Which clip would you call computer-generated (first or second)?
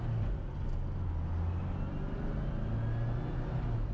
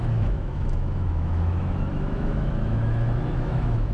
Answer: second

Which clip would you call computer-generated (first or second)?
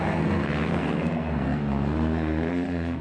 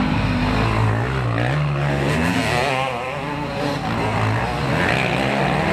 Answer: first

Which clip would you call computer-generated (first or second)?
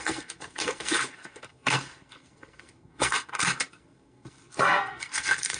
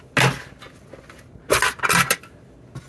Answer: first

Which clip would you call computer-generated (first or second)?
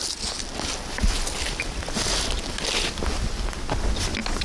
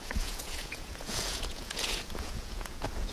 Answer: second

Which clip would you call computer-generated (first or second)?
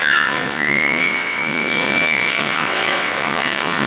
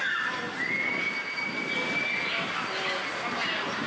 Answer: first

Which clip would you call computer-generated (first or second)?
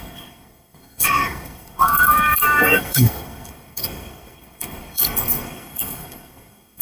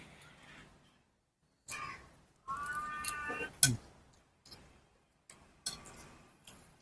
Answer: first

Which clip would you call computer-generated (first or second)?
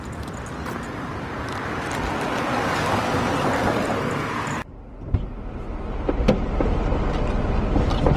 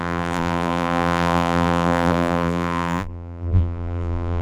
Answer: second